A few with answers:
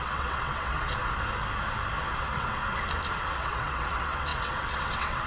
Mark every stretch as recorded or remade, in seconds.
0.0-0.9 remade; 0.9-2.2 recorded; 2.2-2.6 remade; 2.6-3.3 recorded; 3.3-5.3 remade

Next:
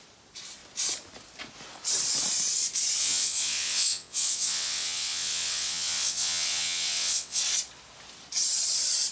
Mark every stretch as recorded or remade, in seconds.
0.0-3.0 recorded; 3.0-7.4 remade; 7.4-9.1 recorded

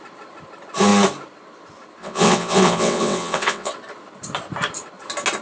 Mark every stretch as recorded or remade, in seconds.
0.0-2.0 recorded; 2.0-3.7 remade; 3.7-5.4 recorded